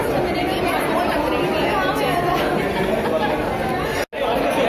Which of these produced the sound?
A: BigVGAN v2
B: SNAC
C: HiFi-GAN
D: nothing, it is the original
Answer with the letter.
D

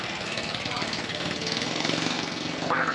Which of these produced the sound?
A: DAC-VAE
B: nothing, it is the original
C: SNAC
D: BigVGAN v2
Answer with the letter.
C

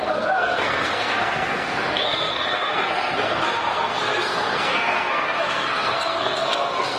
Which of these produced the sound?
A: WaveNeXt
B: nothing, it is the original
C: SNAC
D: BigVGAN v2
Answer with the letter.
C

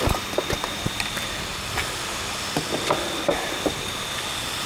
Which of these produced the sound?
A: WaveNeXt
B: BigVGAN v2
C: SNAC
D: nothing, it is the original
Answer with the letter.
D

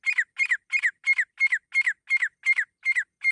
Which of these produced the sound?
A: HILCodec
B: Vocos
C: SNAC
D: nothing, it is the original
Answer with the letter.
D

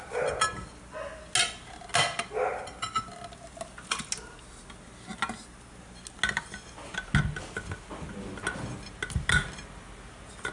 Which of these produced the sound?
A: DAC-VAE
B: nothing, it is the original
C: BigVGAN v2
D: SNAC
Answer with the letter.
B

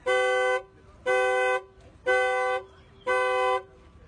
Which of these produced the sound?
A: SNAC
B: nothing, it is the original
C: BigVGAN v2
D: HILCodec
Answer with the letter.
B